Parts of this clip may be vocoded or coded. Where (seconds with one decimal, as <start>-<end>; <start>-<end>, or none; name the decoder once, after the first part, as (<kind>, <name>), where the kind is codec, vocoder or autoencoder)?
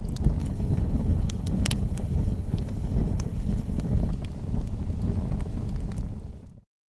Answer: 0.4-4.1 (codec, HILCodec)